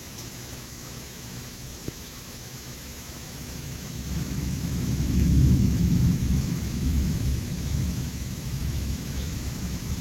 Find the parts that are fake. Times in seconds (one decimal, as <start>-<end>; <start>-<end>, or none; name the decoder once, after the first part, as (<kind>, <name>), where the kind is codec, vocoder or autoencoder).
0.0-10.0 (autoencoder, DAC-VAE)